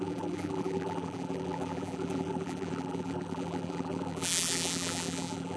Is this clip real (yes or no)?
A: no